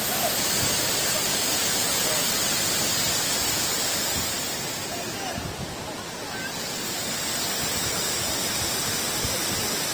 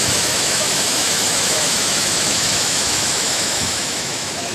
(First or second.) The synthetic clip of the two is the second